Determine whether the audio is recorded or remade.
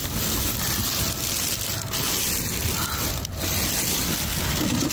recorded